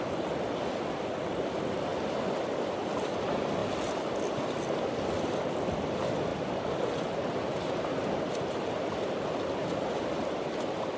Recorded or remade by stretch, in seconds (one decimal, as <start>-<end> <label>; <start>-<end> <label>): 0.0-11.0 recorded